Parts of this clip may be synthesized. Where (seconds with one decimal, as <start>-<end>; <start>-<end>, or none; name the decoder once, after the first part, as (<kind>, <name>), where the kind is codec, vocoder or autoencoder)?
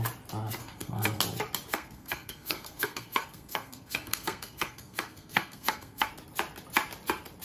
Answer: 0.6-1.2 (codec, SNAC); 1.7-6.1